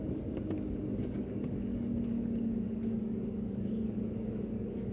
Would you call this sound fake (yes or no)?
yes